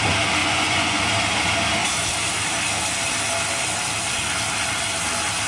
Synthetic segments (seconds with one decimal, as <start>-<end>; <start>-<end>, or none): 0.4-1.0

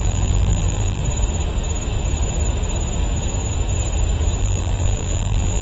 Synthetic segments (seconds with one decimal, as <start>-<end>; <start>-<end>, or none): 0.0-1.0; 4.4-5.6

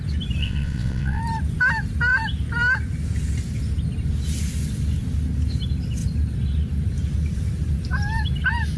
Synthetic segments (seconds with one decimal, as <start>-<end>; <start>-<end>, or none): 0.4-1.2

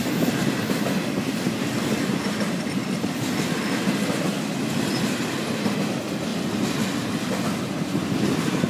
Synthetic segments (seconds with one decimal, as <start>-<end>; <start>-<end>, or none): none

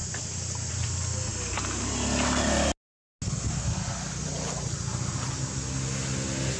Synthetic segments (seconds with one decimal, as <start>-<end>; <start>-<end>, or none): none

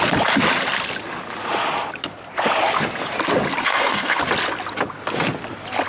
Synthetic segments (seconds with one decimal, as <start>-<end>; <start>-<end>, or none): 3.6-4.2

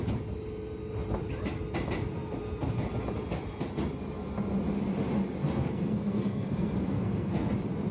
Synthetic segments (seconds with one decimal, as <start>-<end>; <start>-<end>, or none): 5.4-7.5

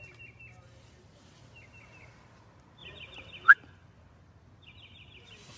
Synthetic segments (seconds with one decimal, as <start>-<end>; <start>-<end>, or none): none